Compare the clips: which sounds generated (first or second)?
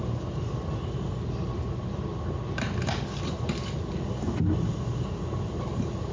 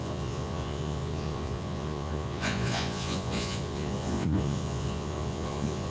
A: second